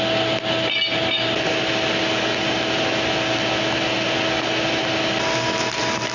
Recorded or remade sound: recorded